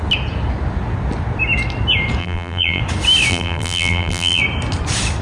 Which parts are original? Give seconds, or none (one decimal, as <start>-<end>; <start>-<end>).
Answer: 0.0-2.2; 2.8-3.3; 4.4-5.2